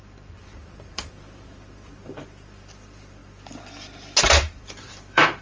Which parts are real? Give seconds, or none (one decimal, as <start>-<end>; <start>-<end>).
3.2-4.2